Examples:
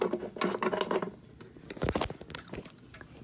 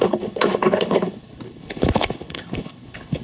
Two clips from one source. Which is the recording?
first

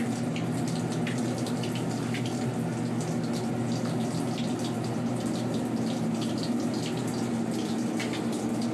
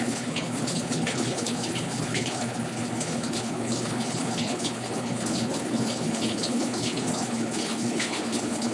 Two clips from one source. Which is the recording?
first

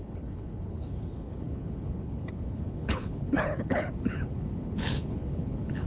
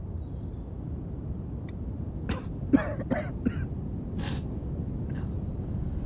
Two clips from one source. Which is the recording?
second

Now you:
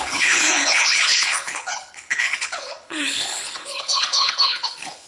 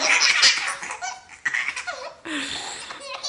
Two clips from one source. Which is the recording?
second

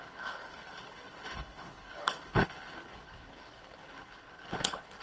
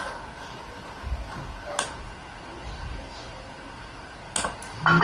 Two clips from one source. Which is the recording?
second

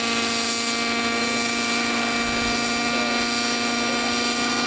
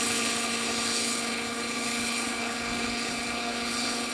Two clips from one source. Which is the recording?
first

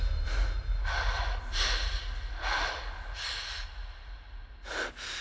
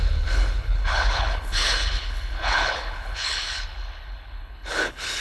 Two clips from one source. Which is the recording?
first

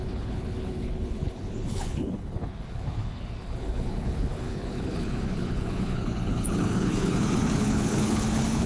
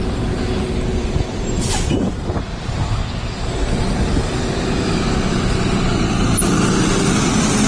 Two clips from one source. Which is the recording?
second